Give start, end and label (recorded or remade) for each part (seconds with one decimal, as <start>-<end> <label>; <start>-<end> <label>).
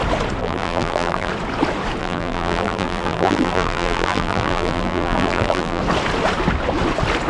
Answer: 0.0-0.4 recorded; 0.4-1.3 remade; 1.3-2.0 recorded; 2.0-5.8 remade; 5.8-7.3 recorded